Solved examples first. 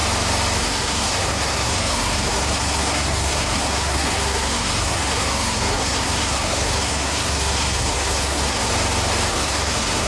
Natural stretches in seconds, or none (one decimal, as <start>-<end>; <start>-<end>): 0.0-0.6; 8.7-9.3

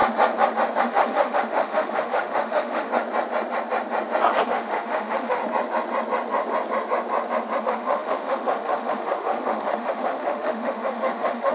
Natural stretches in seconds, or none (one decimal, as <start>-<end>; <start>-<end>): 0.0-0.8; 2.9-4.4; 5.4-7.6

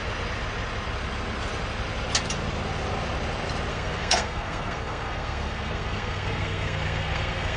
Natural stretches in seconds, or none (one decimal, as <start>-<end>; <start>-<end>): 0.0-3.7